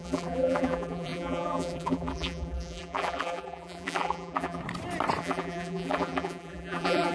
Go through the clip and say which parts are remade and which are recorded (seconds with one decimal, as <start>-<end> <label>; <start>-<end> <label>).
0.0-4.6 remade; 4.6-5.2 recorded; 5.2-7.1 remade